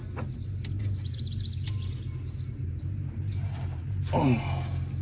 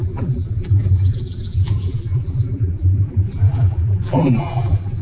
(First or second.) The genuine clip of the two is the first